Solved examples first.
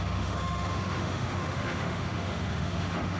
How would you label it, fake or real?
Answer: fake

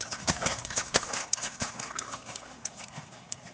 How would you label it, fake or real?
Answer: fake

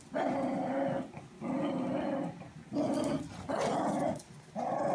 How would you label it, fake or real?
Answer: real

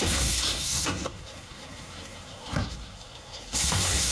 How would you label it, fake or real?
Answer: fake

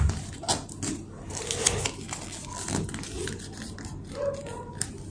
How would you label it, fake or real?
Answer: real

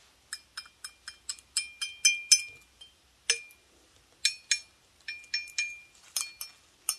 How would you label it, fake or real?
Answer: real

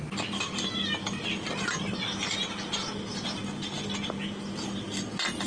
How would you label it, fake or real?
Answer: real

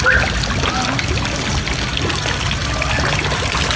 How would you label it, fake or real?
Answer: real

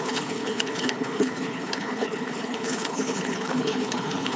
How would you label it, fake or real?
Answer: fake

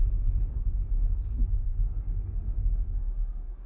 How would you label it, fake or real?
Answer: fake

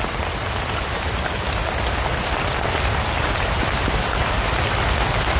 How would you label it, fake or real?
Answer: real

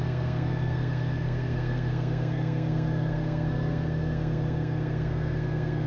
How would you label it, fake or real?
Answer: fake